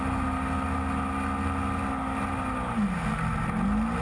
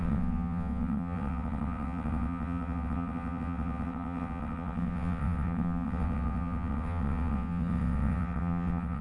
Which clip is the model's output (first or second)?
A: second